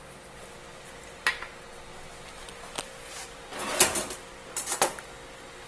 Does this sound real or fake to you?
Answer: real